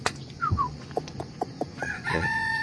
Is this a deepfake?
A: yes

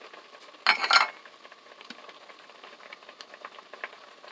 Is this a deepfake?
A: no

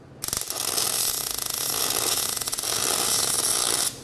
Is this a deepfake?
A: no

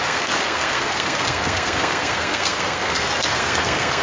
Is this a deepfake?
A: yes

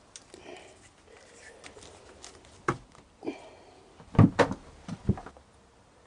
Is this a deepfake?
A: no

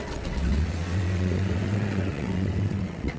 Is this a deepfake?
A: yes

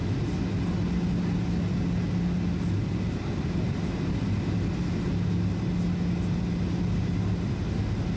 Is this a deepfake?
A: no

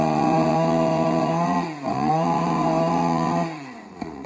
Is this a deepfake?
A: yes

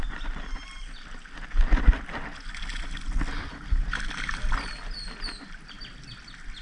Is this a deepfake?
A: no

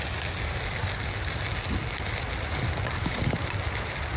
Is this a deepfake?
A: no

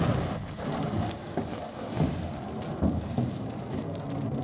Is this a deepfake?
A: no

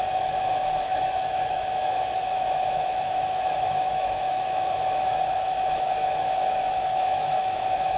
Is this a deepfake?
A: yes